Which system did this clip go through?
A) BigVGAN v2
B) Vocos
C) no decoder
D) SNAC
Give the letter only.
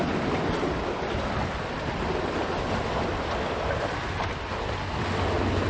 C